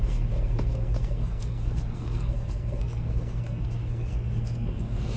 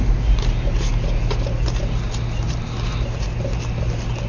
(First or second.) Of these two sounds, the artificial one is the first